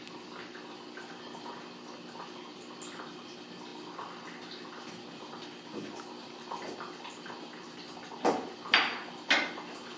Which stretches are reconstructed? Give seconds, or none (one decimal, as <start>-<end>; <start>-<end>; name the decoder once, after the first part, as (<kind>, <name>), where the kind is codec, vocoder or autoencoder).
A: none